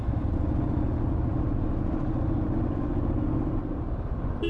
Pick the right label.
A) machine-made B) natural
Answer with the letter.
B